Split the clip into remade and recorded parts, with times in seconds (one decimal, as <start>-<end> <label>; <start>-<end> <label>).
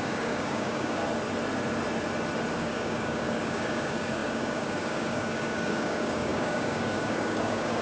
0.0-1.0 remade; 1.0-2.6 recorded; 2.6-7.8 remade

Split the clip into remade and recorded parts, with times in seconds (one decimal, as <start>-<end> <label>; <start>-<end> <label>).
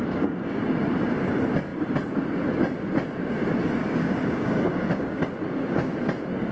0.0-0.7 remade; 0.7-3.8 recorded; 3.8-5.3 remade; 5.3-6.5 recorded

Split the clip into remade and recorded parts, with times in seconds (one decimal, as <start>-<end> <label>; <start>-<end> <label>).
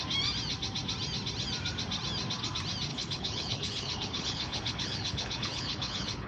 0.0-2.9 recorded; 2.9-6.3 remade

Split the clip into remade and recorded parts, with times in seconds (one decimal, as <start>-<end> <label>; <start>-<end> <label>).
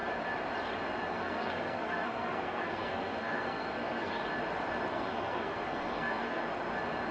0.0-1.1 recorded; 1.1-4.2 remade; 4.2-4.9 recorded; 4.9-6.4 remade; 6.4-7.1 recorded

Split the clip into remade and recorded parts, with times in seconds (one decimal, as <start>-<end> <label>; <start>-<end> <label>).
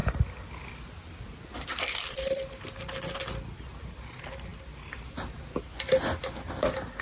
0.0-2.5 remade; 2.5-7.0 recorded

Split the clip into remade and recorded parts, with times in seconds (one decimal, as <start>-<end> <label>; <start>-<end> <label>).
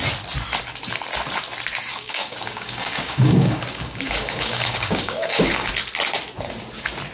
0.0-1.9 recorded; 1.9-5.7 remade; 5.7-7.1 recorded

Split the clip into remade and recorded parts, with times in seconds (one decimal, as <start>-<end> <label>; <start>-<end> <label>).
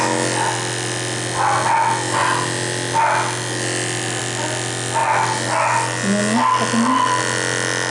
0.0-7.9 recorded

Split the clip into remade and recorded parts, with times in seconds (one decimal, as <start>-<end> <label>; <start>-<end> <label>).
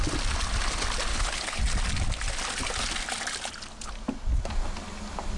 0.0-1.1 recorded; 1.1-1.6 remade; 1.6-5.4 recorded